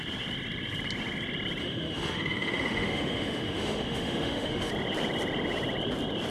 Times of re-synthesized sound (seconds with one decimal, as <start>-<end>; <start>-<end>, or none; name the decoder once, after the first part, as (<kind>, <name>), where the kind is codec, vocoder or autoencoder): 1.6-4.7 (autoencoder, DAC-VAE)